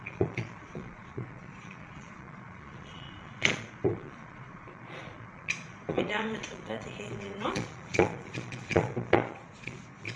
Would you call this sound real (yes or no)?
no